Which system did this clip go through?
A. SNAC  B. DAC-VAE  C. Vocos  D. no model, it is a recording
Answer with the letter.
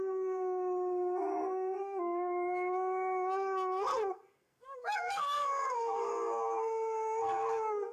A